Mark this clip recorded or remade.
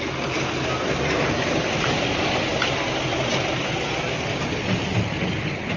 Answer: recorded